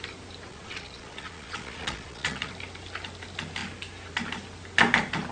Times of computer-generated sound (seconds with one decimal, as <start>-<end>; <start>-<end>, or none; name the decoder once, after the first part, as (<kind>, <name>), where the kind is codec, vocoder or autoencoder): 0.5-2.5 (vocoder, Vocos)